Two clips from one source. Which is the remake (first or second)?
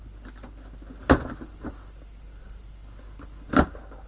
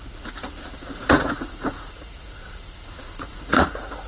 second